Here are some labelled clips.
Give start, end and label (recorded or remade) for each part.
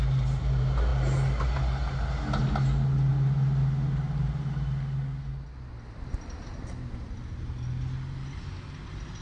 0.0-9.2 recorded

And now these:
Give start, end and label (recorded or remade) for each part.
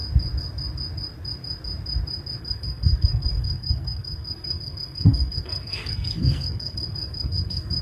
0.0-2.4 recorded; 2.4-7.8 remade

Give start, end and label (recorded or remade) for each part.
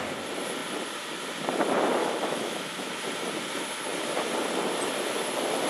0.0-2.0 recorded; 2.0-2.9 remade; 2.9-5.7 recorded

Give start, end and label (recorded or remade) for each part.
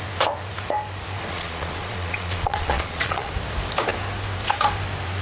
0.0-1.3 recorded; 1.3-3.3 remade; 3.3-5.2 recorded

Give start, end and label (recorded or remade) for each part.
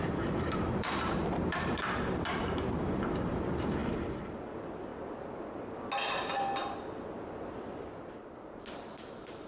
0.0-4.9 remade; 4.9-9.1 recorded; 9.1-9.5 remade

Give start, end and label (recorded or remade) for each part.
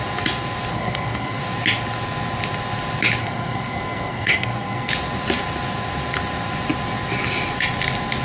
0.0-0.7 recorded; 0.7-1.4 remade; 1.4-3.2 recorded; 3.2-4.9 remade; 4.9-8.2 recorded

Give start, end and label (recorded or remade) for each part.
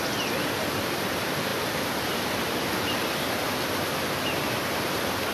0.0-5.3 recorded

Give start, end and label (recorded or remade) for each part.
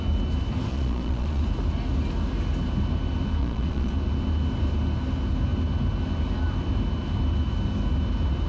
0.0-0.7 recorded; 0.7-1.4 remade; 1.4-3.4 recorded; 3.4-3.9 remade; 3.9-8.5 recorded